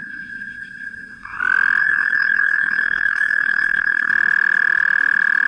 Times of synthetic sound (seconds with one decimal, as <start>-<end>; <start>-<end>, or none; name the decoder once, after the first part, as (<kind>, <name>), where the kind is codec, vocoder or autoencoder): 0.0-1.4 (codec, SNAC); 1.8-4.1